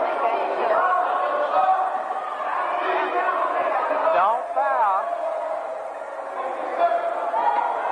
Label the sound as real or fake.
real